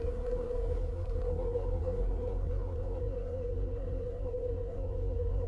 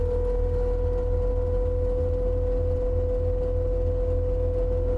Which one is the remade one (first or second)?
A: first